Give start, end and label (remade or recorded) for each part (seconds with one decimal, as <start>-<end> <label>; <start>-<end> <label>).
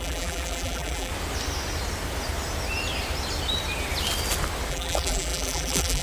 0.0-1.1 remade; 1.1-4.7 recorded; 4.7-6.0 remade